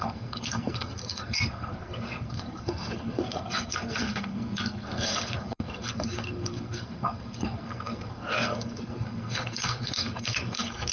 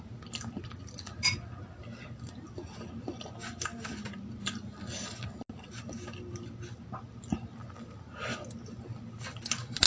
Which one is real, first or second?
second